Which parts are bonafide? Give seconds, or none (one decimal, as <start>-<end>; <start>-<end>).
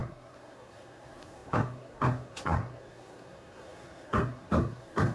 none